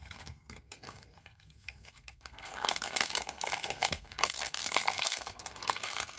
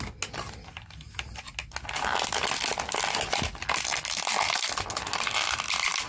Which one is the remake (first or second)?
first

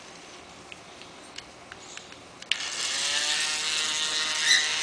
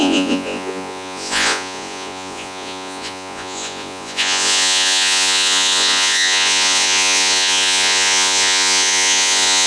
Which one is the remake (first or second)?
second